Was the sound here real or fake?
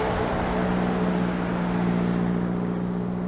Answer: real